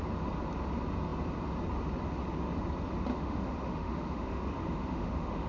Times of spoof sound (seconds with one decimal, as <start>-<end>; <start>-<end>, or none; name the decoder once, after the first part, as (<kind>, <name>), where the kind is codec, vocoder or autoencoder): 3.1-5.5 (autoencoder, DAC-VAE)